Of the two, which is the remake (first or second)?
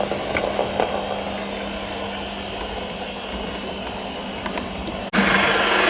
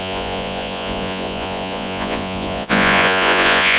second